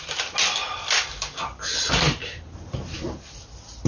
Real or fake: real